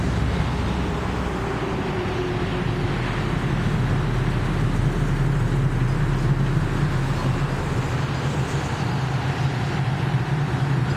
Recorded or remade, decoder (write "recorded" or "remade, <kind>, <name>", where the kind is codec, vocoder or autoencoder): recorded